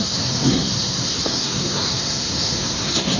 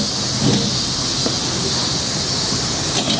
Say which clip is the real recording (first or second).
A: second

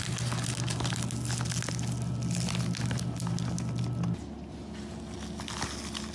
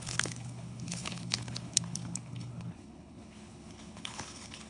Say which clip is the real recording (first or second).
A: first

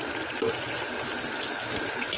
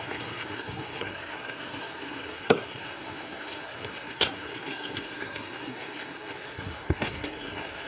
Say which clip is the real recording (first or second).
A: first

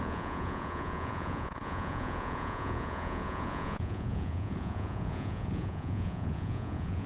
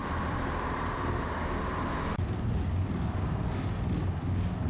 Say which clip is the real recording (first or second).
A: second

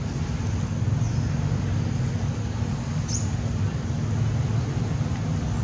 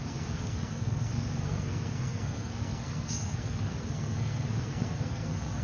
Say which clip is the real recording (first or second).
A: first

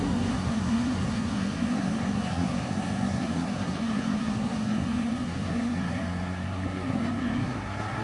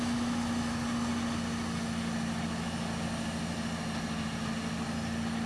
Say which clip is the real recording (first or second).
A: second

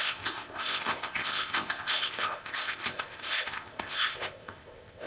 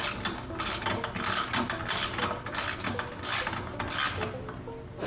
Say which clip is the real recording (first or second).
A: second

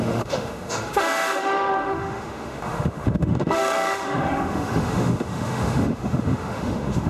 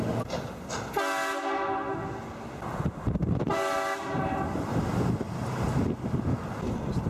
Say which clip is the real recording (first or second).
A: second